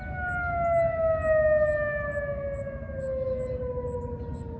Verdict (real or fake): real